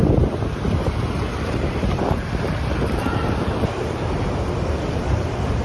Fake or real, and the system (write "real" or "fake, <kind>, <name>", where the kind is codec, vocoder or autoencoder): fake, vocoder, BigVGAN v2